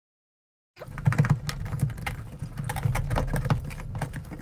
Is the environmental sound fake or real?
real